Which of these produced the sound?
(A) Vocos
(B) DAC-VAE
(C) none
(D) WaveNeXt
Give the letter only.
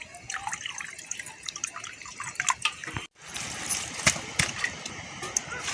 C